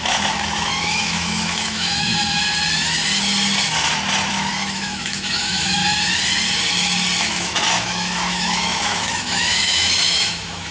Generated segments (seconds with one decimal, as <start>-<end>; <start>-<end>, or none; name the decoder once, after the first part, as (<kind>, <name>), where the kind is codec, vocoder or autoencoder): 0.0-2.1 (autoencoder, DAC-VAE); 4.3-5.8; 7.2-10.7

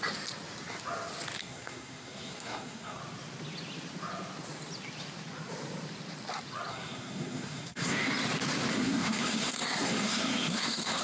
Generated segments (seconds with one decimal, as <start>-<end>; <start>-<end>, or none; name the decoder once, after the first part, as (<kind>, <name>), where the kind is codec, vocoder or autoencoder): 1.4-3.0 (codec, SNAC); 6.7-8.1; 8.7-11.0

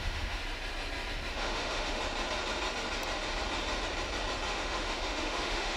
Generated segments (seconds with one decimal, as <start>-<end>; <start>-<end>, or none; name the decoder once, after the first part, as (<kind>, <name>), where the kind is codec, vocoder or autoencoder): 0.0-0.4 (autoencoder, DAC-VAE); 1.3-2.0; 4.5-5.8

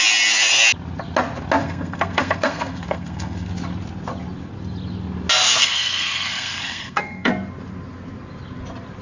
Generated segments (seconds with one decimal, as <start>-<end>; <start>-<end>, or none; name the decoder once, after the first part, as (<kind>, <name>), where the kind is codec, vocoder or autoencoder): 1.6-3.5 (codec, SNAC); 5.6-7.3

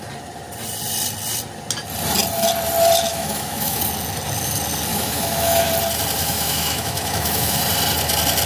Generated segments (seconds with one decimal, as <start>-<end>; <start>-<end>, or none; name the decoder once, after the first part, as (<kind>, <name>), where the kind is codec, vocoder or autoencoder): 3.1-3.8 (autoencoder, DAC-VAE); 4.9-5.7; 6.2-7.6

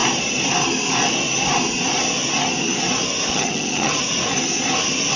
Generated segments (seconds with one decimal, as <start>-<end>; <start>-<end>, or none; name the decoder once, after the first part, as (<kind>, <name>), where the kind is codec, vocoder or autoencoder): 3.3-4.0 (vocoder, HiFi-GAN)